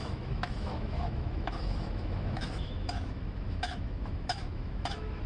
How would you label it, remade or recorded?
remade